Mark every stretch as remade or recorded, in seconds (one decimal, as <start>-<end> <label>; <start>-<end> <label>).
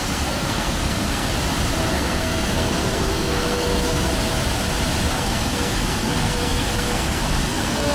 0.0-1.3 remade; 1.3-1.9 recorded; 1.9-4.1 remade; 4.1-5.1 recorded; 5.1-7.9 remade